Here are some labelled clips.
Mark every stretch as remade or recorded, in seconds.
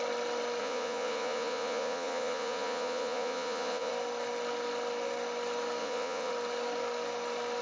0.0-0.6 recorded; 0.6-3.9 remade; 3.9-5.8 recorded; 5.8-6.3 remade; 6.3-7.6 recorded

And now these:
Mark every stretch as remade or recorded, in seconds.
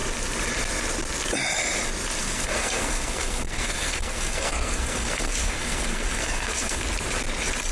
0.0-2.2 recorded; 2.2-6.8 remade; 6.8-7.7 recorded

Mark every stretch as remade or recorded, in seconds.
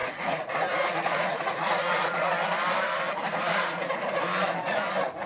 0.0-2.3 remade; 2.3-3.5 recorded; 3.5-4.2 remade; 4.2-5.3 recorded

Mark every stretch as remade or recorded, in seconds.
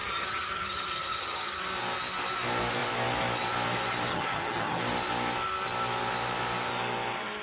0.0-1.6 remade; 1.6-4.1 recorded; 4.1-4.8 remade; 4.8-7.4 recorded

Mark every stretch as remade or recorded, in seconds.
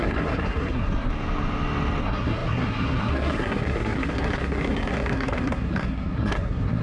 0.0-1.1 remade; 1.1-2.0 recorded; 2.0-6.8 remade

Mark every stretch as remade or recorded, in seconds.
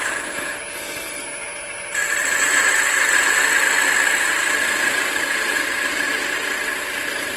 0.0-7.4 recorded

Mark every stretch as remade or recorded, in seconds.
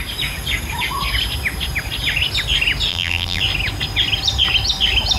0.0-2.9 recorded; 2.9-3.4 remade; 3.4-5.2 recorded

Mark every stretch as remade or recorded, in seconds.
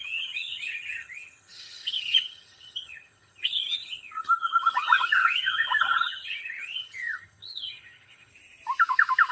0.0-8.3 remade; 8.3-9.3 recorded